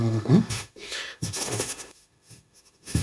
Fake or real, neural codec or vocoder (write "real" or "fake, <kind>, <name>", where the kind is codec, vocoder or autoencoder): fake, autoencoder, DAC-VAE